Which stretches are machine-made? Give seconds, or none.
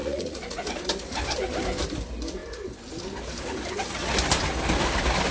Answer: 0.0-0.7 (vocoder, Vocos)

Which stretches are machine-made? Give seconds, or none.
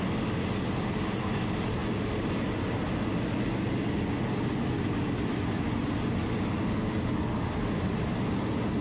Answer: none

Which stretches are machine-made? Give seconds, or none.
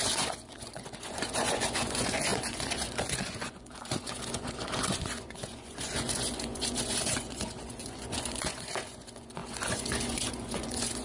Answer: 0.0-11.0 (vocoder, Vocos)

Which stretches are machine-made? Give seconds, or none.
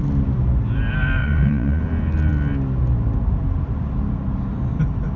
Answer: 1.2-1.8 (vocoder, Vocos)